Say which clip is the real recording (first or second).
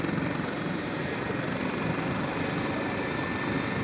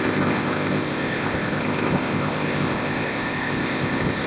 first